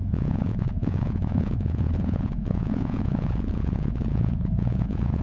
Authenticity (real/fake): fake